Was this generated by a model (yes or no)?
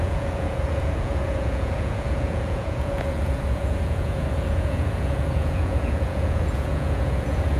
yes